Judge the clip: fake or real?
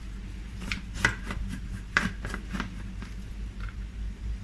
fake